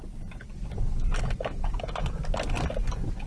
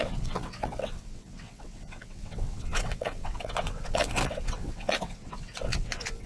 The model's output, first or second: second